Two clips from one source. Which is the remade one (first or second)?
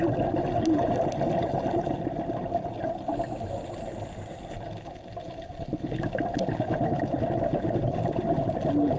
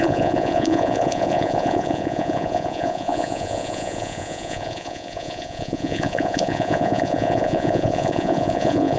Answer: second